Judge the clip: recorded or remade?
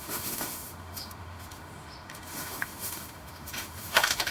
remade